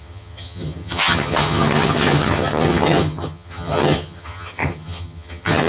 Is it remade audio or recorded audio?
remade